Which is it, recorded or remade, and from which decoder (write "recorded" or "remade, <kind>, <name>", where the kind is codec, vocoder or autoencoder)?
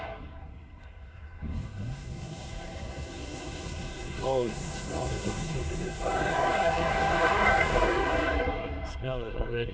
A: remade, codec, SNAC